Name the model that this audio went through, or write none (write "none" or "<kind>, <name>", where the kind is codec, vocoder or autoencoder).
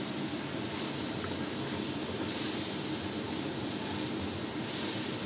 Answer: none